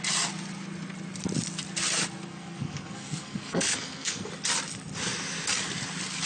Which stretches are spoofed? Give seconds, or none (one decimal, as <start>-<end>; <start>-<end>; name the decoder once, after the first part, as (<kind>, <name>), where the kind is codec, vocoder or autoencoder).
2.3-4.3 (codec, SNAC)